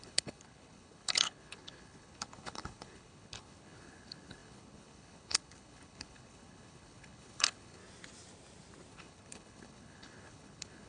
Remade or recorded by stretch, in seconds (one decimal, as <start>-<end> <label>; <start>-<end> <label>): 0.0-7.8 remade; 7.8-8.9 recorded; 8.9-10.9 remade